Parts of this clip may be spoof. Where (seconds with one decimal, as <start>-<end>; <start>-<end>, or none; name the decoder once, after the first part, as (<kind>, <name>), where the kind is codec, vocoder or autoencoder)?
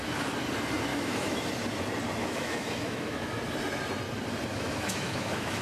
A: 0.9-1.4 (autoencoder, DAC-VAE); 2.2-3.3; 4.5-5.6